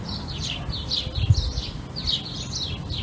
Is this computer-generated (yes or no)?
no